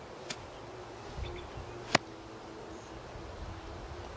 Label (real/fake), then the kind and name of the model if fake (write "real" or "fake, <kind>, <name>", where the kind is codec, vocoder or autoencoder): real